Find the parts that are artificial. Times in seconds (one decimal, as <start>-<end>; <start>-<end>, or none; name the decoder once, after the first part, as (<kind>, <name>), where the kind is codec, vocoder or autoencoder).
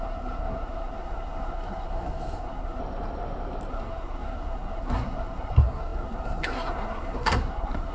0.0-2.8 (codec, SNAC); 3.7-7.9